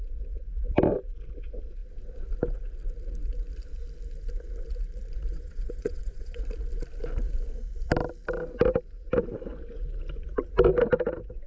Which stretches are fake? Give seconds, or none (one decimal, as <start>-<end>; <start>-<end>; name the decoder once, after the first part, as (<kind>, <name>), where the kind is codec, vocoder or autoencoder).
5.3-6.4 (vocoder, WaveNeXt)